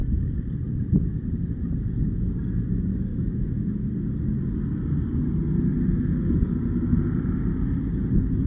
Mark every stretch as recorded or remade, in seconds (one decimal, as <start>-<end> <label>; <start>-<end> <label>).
0.0-3.1 recorded; 3.1-3.8 remade; 3.8-8.5 recorded